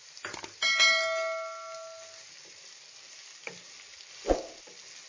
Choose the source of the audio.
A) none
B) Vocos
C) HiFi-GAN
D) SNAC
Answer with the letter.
A